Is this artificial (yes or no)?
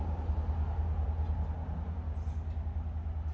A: no